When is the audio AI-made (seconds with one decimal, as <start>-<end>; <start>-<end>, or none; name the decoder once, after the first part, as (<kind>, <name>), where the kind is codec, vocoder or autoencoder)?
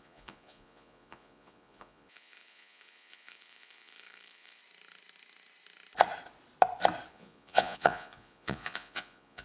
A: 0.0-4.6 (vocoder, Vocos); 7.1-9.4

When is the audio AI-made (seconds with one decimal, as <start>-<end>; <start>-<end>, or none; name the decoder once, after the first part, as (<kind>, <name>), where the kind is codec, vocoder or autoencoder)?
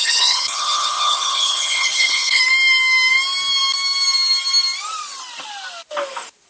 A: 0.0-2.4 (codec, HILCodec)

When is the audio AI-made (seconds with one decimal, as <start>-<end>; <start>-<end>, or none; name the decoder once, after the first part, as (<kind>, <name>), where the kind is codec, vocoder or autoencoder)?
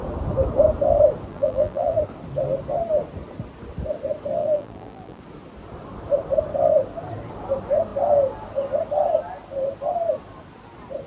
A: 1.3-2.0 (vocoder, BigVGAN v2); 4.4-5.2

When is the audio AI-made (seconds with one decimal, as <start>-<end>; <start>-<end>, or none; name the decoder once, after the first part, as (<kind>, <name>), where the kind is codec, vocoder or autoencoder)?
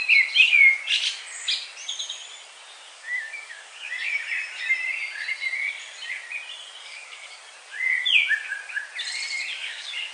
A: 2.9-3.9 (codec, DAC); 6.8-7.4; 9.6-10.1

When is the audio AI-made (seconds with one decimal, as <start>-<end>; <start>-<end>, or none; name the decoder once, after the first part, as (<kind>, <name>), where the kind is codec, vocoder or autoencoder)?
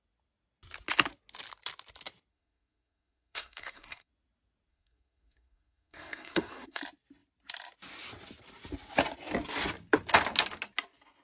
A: 2.3-4.1 (codec, SNAC); 4.7-6.8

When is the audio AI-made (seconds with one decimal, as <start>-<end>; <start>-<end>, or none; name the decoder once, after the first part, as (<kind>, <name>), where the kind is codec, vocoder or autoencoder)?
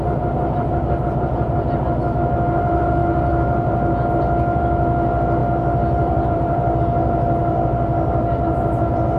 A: 5.4-6.8 (vocoder, BigVGAN v2)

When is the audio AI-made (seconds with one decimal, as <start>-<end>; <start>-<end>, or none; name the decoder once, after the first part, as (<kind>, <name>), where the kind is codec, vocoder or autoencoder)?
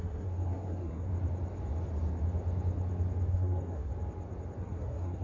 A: 0.0-1.1 (codec, SNAC); 3.3-3.9; 4.6-5.2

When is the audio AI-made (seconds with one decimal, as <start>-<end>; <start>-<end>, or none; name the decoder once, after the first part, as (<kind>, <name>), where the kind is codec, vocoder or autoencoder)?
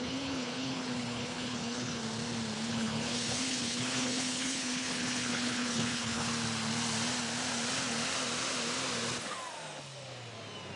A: 0.0-2.0 (codec, HILCodec); 2.7-6.3